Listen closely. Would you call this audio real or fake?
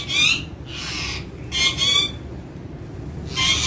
real